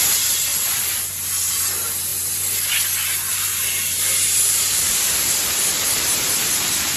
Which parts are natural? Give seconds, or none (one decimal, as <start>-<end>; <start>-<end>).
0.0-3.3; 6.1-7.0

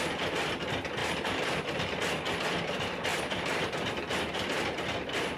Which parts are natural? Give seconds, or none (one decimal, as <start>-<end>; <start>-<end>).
0.0-1.0; 2.0-3.1

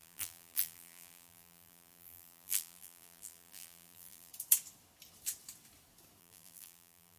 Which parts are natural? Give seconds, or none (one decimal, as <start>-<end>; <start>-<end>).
4.3-6.2